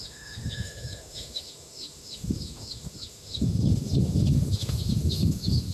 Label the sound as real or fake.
fake